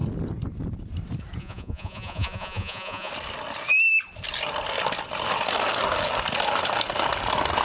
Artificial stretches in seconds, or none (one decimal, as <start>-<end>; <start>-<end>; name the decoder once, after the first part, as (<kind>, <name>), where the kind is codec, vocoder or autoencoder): 1.4-3.1 (vocoder, Vocos)